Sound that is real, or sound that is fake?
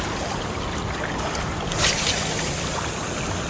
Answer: fake